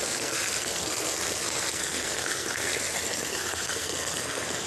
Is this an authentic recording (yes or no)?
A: no